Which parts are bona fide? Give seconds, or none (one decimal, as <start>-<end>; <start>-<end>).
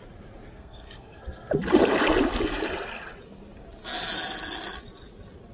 0.0-0.5; 1.2-5.5